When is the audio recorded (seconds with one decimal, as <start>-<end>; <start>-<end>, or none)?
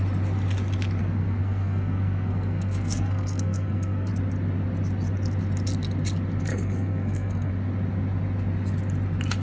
0.0-1.0; 4.1-6.5; 7.5-9.4